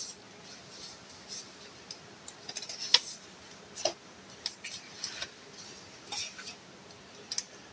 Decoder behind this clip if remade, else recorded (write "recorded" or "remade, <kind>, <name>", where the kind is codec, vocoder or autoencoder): recorded